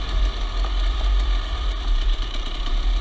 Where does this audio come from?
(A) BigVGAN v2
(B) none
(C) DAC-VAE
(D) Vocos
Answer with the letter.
A